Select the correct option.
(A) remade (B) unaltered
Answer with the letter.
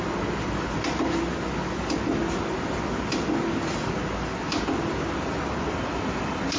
B